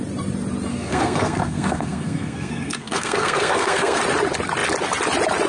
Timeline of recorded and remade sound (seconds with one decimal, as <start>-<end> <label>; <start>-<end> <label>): 0.0-0.7 recorded; 0.7-4.0 remade; 4.0-5.5 recorded